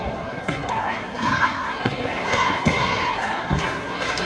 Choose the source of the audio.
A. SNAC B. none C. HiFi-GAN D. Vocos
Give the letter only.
A